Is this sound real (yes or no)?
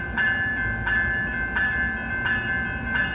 yes